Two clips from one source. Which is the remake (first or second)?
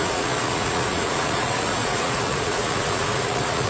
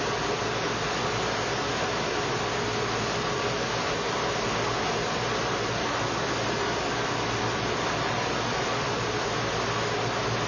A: first